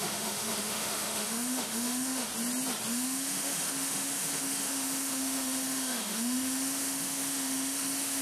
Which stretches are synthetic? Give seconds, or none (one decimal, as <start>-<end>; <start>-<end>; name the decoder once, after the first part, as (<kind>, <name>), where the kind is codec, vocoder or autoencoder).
0.0-2.3 (autoencoder, DAC-VAE); 2.9-8.2